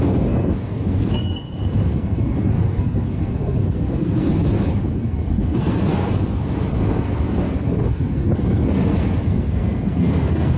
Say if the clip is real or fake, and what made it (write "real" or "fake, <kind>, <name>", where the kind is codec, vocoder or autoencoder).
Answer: fake, codec, SNAC